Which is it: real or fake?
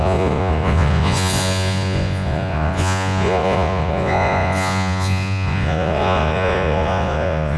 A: fake